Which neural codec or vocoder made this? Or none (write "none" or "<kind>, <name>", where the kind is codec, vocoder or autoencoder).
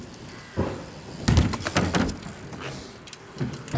none